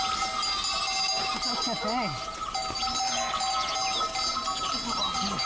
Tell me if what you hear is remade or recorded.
recorded